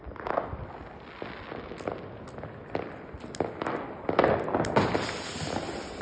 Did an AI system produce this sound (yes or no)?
no